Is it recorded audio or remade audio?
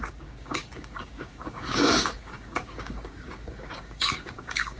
remade